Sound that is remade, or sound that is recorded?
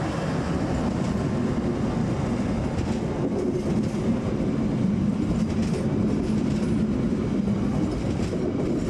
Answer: recorded